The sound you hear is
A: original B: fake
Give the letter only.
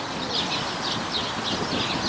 A